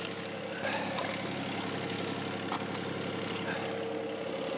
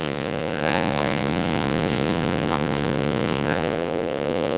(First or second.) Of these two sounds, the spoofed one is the second